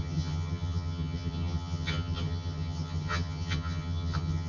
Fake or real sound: fake